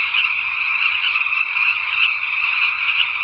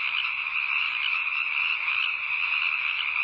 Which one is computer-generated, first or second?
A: first